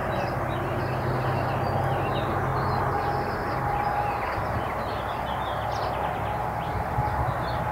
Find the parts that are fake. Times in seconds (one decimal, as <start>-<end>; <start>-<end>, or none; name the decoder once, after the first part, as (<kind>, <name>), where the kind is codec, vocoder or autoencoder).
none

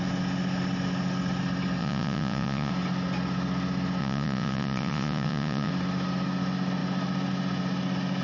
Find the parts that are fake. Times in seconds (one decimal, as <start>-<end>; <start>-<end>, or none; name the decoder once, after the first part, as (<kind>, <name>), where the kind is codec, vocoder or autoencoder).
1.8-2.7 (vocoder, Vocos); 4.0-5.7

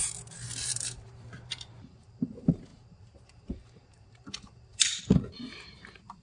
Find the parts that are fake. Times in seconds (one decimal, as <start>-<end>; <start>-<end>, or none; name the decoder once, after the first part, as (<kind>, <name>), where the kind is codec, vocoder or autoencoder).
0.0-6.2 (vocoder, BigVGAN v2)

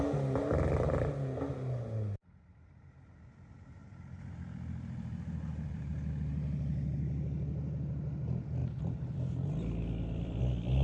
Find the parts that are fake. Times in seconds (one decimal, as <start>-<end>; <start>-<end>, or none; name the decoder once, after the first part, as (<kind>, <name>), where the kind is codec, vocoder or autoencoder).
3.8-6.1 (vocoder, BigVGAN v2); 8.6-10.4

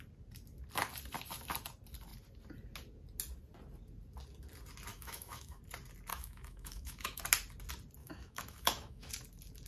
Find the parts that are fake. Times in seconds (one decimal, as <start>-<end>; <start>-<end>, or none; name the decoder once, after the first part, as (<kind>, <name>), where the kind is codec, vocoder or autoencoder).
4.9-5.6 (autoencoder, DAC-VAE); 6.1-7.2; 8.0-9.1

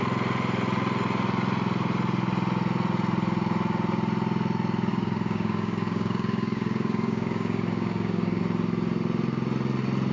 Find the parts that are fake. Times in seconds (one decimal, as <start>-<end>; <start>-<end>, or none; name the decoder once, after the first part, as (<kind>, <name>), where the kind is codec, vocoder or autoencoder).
4.9-8.4 (codec, DAC)

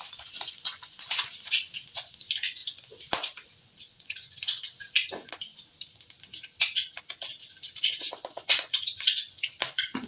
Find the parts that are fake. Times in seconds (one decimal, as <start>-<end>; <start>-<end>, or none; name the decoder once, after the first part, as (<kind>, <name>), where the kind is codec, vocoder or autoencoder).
0.0-5.5 (vocoder, Vocos); 7.8-10.1

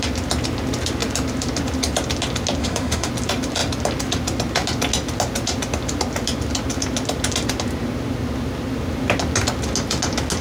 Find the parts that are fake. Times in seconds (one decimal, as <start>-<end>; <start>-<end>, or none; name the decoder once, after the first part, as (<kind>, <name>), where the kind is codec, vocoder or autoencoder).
2.6-3.1 (autoencoder, DAC-VAE)